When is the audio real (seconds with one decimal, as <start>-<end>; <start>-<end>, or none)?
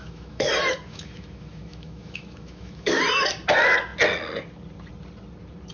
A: 0.5-0.9; 3.0-5.7